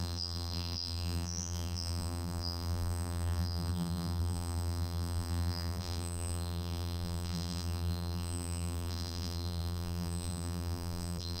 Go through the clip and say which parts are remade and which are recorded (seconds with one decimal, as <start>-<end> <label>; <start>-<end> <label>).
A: 0.0-11.4 remade